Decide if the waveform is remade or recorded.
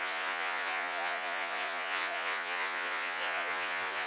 remade